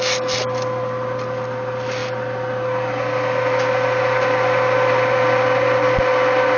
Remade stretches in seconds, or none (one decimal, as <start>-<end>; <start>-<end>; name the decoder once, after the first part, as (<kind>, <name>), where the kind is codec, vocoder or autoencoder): none